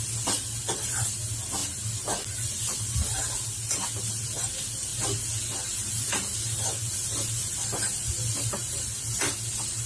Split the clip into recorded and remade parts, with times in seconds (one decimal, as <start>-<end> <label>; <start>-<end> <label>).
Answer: 0.0-9.9 recorded